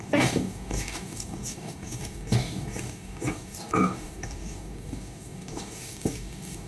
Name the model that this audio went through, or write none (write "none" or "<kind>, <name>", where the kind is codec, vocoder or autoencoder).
codec, DAC